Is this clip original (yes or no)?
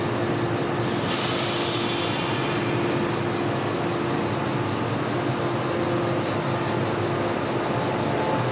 yes